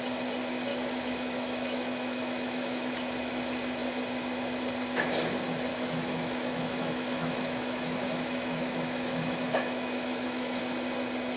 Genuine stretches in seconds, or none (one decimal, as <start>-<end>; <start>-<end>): 0.0-0.7; 3.3-5.7; 10.6-11.4